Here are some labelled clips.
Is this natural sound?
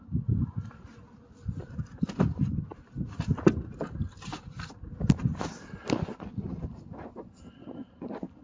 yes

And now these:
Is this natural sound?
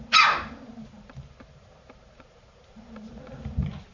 no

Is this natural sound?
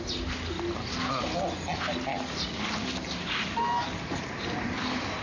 yes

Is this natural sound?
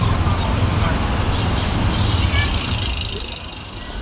yes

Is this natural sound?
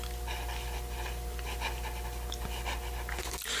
yes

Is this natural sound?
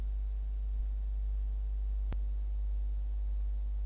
yes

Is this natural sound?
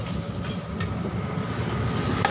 yes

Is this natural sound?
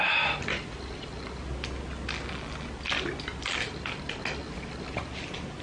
yes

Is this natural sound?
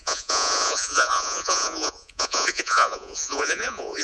no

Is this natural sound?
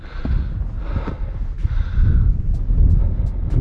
yes